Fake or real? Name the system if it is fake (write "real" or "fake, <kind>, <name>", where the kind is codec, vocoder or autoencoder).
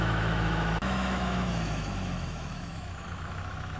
fake, autoencoder, DAC-VAE